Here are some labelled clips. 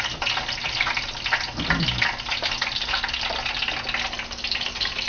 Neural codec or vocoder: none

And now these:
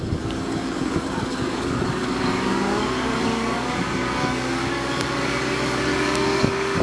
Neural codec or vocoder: codec, DAC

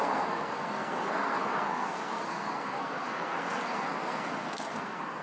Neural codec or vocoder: codec, SNAC